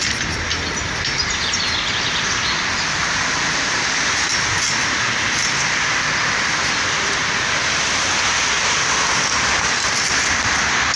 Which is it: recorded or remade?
remade